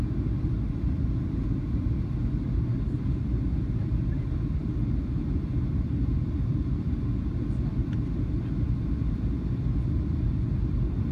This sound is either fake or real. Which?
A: real